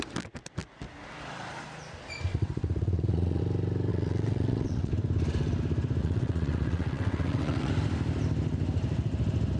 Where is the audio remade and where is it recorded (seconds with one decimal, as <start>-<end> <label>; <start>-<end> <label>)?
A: 0.0-2.3 recorded; 2.3-3.4 remade; 3.4-3.9 recorded; 3.9-4.9 remade; 4.9-6.0 recorded; 6.0-7.7 remade; 7.7-9.6 recorded